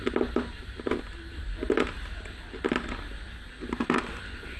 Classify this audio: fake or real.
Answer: real